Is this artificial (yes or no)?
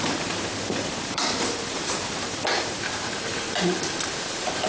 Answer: yes